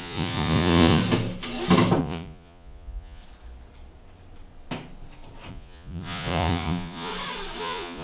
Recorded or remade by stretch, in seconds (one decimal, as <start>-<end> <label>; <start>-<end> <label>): 0.0-1.0 remade; 1.0-2.0 recorded; 2.0-3.2 remade; 3.2-5.5 recorded; 5.5-7.1 remade; 7.1-7.6 recorded; 7.6-8.0 remade